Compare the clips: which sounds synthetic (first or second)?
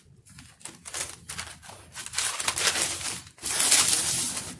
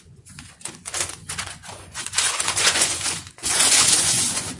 second